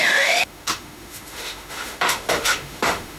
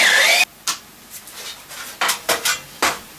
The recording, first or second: second